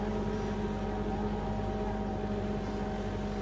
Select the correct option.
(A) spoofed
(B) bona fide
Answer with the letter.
B